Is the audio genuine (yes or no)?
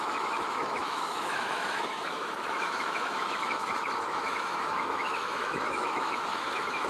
no